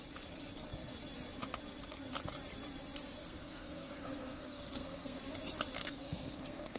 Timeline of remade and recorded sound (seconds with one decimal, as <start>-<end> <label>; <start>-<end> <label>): 0.0-3.2 recorded; 3.2-5.2 remade; 5.2-5.8 recorded; 5.8-6.8 remade